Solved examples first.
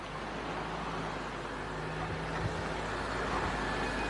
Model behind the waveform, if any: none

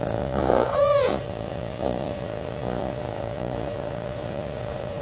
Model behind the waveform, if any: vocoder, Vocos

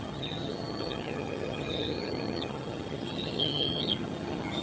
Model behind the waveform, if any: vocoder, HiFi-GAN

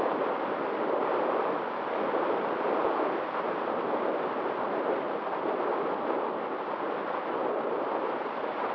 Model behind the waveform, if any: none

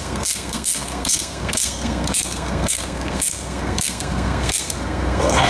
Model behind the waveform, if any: codec, SNAC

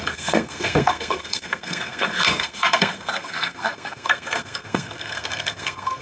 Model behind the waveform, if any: codec, SNAC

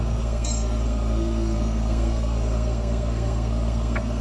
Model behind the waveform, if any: codec, SNAC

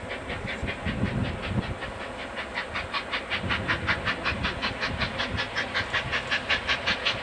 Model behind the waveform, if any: none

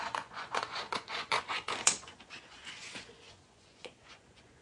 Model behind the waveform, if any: vocoder, Vocos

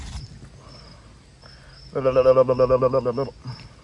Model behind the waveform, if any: none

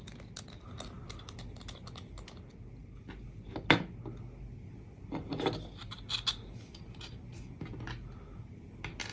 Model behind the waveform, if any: none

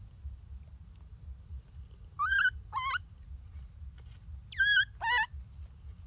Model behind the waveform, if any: none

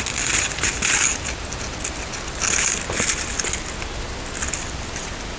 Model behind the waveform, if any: none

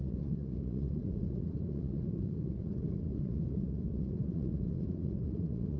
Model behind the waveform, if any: vocoder, Vocos